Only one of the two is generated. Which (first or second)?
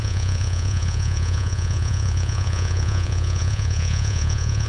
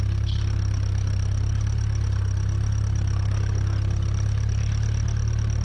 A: first